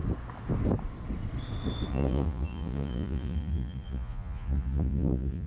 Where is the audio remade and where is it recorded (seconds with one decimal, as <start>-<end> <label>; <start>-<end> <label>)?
0.0-1.9 recorded; 1.9-5.5 remade